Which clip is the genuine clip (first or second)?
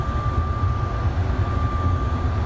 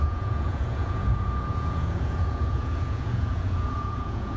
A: first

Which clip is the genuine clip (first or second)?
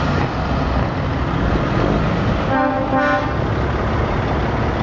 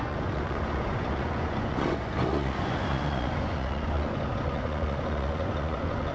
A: first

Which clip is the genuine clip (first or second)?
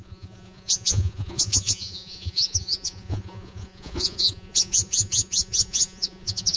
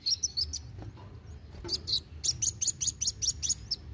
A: second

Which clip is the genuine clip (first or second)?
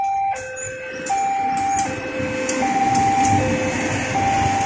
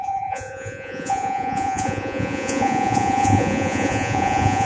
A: first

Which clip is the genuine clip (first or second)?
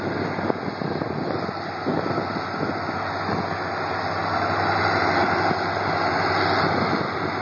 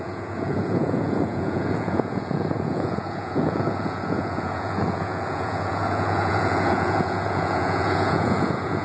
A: first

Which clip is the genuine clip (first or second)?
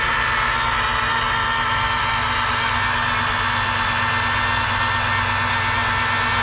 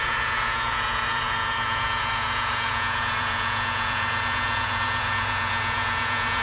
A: first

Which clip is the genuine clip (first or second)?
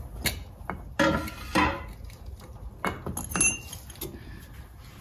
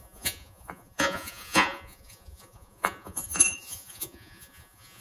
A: first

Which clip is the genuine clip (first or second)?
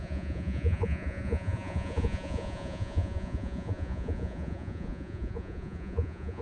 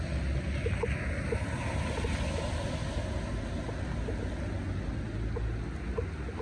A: second